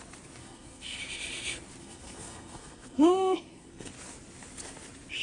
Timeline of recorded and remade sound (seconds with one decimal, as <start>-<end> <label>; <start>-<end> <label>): 0.0-0.4 recorded; 0.4-1.0 remade; 1.0-1.8 recorded; 1.8-3.9 remade; 3.9-5.2 recorded